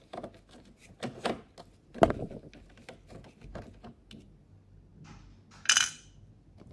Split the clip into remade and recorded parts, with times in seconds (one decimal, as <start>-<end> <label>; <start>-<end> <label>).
0.0-6.7 recorded